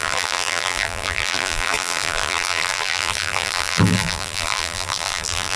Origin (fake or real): fake